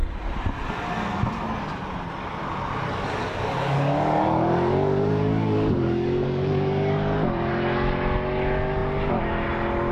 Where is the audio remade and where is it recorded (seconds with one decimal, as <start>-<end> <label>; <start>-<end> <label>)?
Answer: 0.0-3.2 recorded; 3.2-7.5 remade; 7.5-9.9 recorded